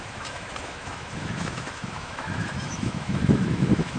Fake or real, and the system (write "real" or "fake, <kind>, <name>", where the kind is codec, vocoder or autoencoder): fake, autoencoder, DAC-VAE